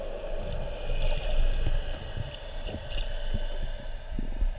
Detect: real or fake real